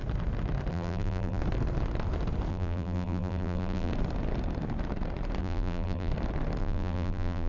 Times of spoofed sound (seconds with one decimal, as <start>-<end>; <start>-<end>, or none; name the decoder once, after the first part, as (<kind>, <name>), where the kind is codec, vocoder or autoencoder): 0.7-1.4 (vocoder, BigVGAN v2); 2.5-3.9; 5.4-6.1; 6.6-7.5